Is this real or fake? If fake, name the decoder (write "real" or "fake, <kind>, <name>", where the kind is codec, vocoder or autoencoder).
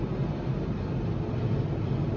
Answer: real